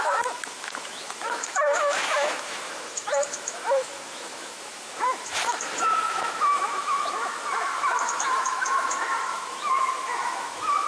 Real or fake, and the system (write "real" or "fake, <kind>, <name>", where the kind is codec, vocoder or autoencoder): fake, autoencoder, DAC-VAE